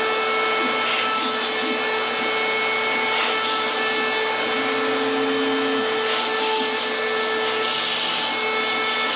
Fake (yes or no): no